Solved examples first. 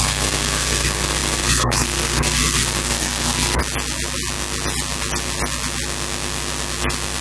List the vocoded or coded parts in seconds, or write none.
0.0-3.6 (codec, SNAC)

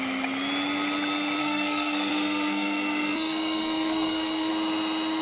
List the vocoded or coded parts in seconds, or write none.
1.4-4.5 (codec, SNAC)

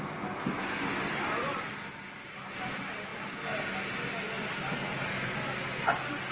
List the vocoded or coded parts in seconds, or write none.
none

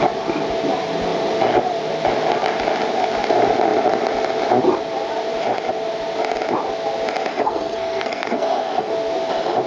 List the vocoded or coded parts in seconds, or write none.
7.3-8.9 (codec, SNAC)

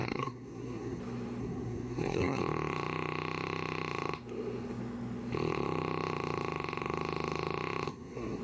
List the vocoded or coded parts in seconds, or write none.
0.0-1.0 (codec, SNAC); 1.4-2.4; 7.9-8.4

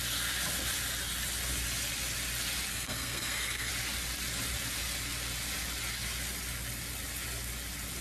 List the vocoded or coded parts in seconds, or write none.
2.7-3.7 (codec, SNAC)

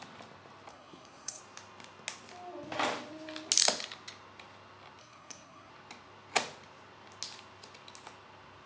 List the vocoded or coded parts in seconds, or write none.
0.7-1.4 (codec, SNAC); 5.0-5.7